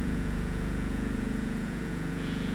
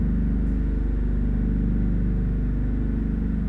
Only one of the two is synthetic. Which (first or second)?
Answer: first